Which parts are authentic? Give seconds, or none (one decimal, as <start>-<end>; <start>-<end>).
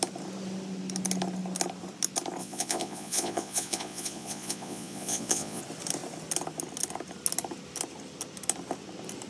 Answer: 0.0-2.4; 5.6-9.3